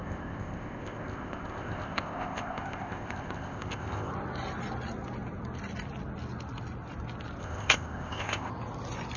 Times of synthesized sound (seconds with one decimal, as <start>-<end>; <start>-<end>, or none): 0.0-4.1; 7.4-8.5